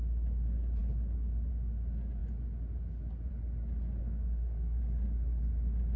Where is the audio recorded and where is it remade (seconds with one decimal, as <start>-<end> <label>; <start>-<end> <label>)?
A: 0.0-4.0 recorded; 4.0-4.8 remade; 4.8-6.0 recorded